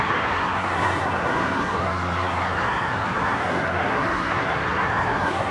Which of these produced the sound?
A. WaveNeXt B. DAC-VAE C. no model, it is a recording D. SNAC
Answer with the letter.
D